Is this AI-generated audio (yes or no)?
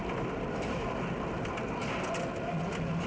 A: no